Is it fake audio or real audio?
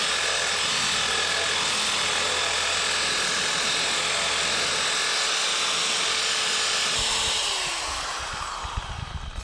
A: real